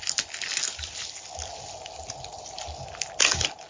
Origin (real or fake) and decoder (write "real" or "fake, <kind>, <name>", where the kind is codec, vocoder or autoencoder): real